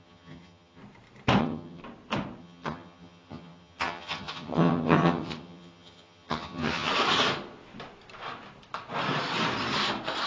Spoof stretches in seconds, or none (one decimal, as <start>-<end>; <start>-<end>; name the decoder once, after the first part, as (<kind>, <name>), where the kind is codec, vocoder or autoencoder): 0.0-0.8 (vocoder, HiFi-GAN); 1.4-1.8; 2.4-6.9